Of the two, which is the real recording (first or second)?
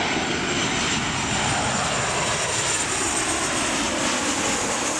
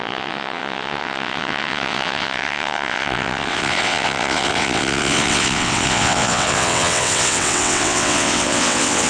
first